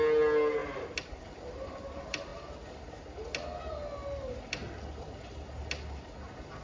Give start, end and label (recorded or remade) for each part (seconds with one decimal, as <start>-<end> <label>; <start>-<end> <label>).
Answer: 0.0-6.6 recorded